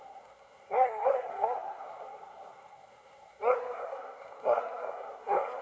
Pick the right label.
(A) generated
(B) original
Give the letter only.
A